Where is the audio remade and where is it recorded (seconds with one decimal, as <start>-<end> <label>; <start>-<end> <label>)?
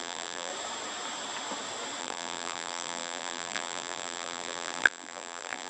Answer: 0.0-0.5 remade; 0.5-2.0 recorded; 2.0-5.7 remade